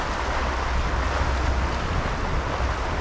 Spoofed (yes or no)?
no